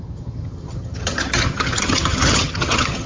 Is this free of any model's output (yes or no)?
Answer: no